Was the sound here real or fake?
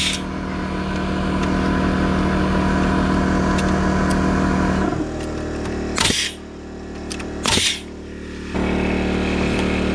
real